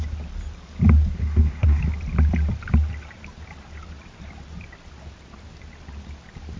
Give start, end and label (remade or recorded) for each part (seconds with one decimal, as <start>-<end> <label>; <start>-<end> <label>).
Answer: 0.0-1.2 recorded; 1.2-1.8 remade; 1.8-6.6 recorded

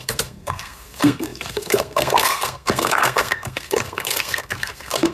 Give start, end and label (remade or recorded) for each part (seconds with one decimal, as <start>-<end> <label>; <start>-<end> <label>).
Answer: 0.0-5.1 remade

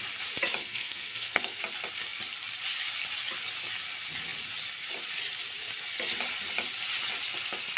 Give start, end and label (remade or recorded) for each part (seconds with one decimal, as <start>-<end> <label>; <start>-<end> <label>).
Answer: 0.0-0.6 recorded; 0.6-1.6 remade; 1.6-7.8 recorded

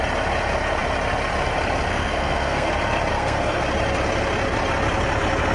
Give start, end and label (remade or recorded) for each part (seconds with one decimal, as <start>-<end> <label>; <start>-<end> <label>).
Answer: 0.0-1.9 recorded; 1.9-2.7 remade; 2.7-3.1 recorded; 3.1-3.6 remade; 3.6-5.5 recorded

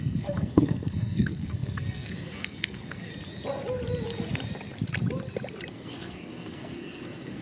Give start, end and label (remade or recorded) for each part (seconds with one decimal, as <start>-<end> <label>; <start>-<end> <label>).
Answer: 0.0-3.1 remade; 3.1-5.7 recorded; 5.7-7.4 remade